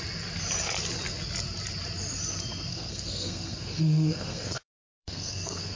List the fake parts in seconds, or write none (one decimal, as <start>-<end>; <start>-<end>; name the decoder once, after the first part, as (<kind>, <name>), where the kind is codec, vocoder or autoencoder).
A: 2.7-5.8 (codec, SNAC)